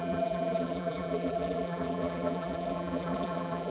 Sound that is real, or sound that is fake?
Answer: fake